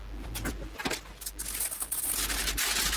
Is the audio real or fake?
real